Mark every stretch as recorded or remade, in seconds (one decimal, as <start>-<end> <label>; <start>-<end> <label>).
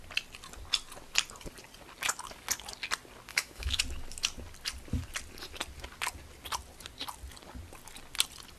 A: 0.0-3.3 recorded; 3.3-3.8 remade; 3.8-8.6 recorded